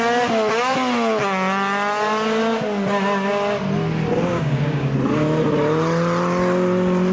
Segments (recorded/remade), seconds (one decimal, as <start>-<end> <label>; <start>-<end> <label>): 0.0-4.3 recorded; 4.3-4.9 remade; 4.9-7.1 recorded

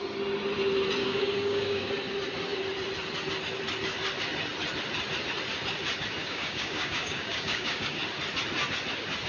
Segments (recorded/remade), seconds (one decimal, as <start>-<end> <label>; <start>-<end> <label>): 0.0-1.0 recorded; 1.0-1.9 remade; 1.9-6.2 recorded; 6.2-8.0 remade; 8.0-9.3 recorded